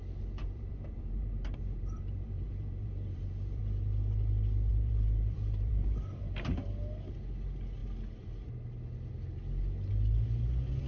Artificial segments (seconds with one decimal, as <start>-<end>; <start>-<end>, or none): 0.4-3.6; 4.7-6.5